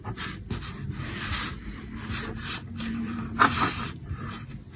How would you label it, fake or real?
fake